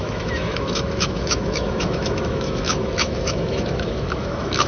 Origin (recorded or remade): remade